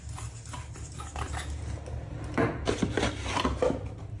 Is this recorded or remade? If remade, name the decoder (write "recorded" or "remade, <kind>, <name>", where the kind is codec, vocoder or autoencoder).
recorded